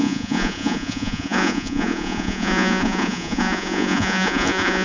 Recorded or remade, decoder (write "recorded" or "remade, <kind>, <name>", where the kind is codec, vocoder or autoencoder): remade, vocoder, Vocos